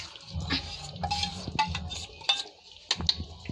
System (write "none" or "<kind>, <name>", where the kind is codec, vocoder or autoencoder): none